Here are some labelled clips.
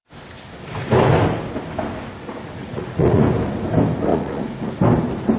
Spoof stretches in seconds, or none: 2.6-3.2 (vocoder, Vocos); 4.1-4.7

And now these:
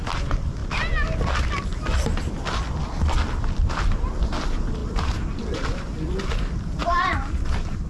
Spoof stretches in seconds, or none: 4.8-5.3 (vocoder, BigVGAN v2); 6.8-7.4